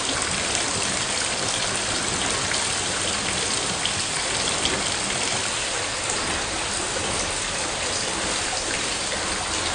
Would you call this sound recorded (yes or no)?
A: yes